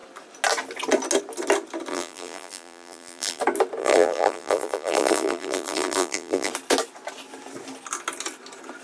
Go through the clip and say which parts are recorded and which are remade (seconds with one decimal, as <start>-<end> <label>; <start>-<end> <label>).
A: 0.0-1.9 recorded; 1.9-3.4 remade; 3.4-3.8 recorded; 3.8-6.5 remade; 6.5-8.8 recorded